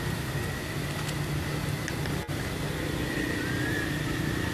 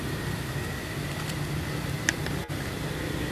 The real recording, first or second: first